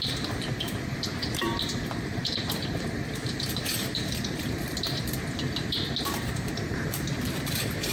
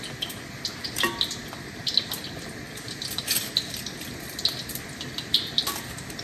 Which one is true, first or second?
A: second